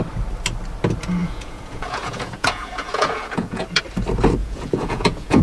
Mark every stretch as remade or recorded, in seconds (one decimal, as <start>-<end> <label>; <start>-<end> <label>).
0.0-1.2 recorded; 1.2-3.8 remade; 3.8-4.4 recorded; 4.4-5.4 remade